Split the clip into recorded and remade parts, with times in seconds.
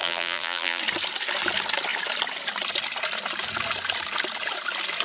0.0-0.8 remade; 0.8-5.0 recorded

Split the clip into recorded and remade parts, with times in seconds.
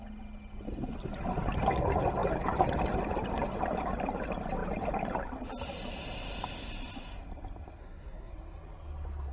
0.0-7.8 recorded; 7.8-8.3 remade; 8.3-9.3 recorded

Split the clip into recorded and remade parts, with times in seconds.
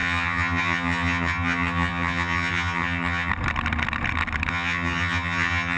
0.0-3.3 remade; 3.3-4.5 recorded; 4.5-5.8 remade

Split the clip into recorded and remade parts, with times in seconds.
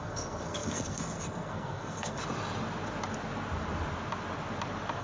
0.0-2.2 remade; 2.2-5.0 recorded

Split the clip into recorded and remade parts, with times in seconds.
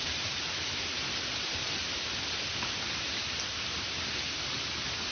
0.0-5.1 recorded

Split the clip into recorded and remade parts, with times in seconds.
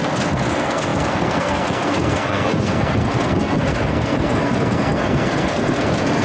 0.0-6.2 remade